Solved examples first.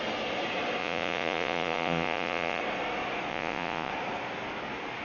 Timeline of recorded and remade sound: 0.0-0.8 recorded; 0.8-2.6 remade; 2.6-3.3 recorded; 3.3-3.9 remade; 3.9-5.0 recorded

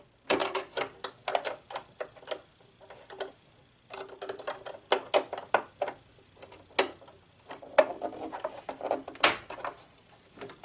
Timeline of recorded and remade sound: 0.0-10.6 recorded

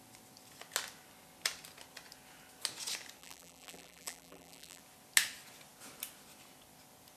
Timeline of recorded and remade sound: 0.0-3.2 recorded; 3.2-4.8 remade; 4.8-7.2 recorded

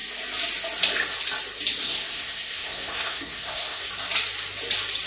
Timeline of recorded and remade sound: 0.0-1.8 recorded; 1.8-3.9 remade; 3.9-5.1 recorded